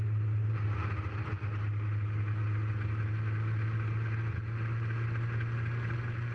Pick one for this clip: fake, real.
real